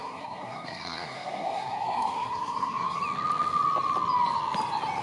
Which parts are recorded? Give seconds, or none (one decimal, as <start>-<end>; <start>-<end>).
3.0-5.0